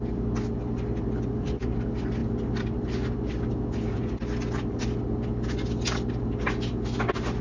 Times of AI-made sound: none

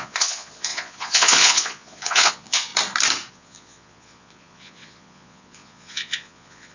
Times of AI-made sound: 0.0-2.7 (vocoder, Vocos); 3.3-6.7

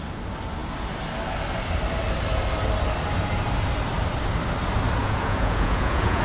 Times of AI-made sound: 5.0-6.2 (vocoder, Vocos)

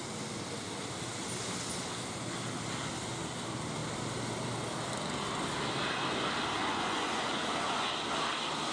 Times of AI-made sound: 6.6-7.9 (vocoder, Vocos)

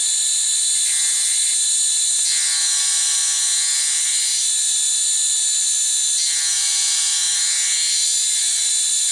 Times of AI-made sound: none

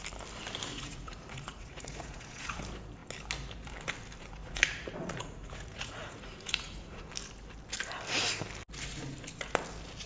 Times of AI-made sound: 0.7-2.6 (vocoder, Vocos); 4.4-7.1

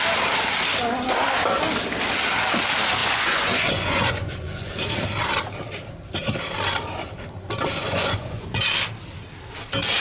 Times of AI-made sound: 3.0-4.9 (vocoder, Vocos); 7.8-8.6